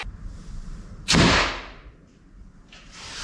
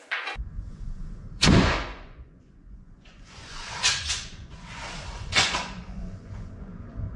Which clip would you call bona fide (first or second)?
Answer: first